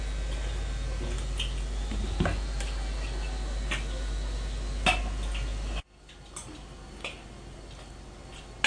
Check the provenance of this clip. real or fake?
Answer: real